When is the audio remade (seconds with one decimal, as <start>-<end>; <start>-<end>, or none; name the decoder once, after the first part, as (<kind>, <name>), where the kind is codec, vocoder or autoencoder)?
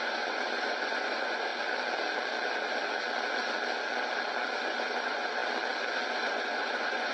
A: 0.0-1.5 (vocoder, Vocos); 4.6-5.4; 6.1-7.1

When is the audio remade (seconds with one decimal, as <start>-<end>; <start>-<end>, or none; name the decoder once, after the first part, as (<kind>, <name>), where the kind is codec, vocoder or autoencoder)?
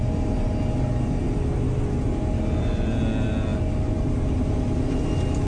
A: none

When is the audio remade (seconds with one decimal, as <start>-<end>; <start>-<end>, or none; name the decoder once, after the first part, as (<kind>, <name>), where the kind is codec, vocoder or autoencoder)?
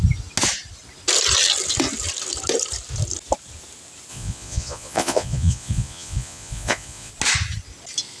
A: 4.1-7.1 (vocoder, Vocos)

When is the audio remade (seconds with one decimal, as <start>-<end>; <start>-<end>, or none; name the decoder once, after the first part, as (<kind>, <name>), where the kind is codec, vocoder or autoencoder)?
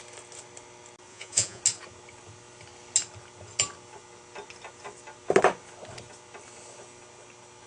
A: 1.1-1.6 (vocoder, Vocos)